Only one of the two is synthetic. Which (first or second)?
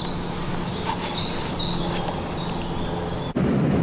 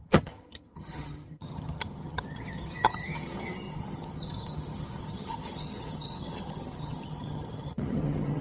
second